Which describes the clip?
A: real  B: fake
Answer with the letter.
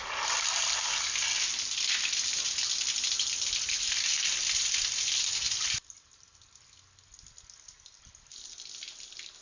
A